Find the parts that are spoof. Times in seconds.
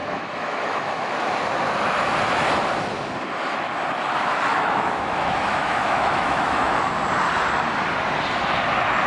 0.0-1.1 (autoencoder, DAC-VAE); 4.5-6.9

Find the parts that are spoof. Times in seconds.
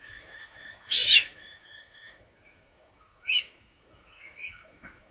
0.0-5.1 (autoencoder, DAC-VAE)